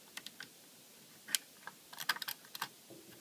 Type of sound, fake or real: real